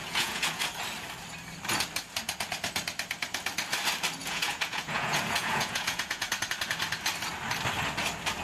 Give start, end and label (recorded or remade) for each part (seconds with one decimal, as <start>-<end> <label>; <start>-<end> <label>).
0.0-0.6 remade; 0.6-4.2 recorded; 4.2-6.3 remade; 6.3-8.4 recorded